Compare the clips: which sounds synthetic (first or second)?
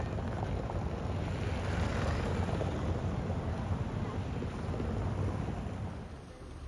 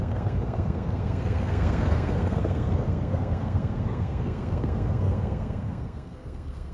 second